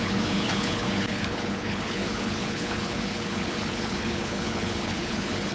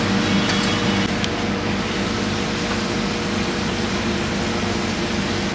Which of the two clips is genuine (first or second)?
second